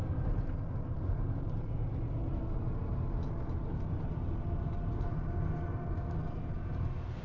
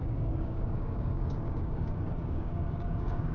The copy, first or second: second